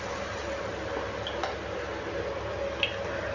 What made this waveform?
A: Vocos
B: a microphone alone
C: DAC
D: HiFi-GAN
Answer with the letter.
B